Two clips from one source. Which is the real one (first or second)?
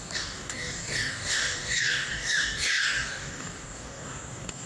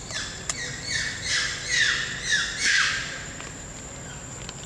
second